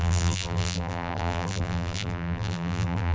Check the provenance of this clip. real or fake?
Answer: fake